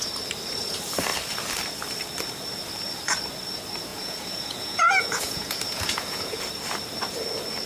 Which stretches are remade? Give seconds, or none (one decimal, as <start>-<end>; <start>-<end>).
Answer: 3.9-6.4